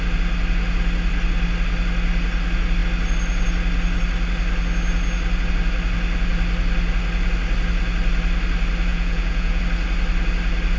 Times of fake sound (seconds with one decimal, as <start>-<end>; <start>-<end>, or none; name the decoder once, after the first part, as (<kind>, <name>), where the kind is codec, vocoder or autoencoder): 8.9-9.6 (vocoder, Vocos)